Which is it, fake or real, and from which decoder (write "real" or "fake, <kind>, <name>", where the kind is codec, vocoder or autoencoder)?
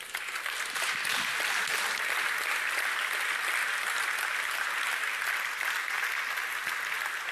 real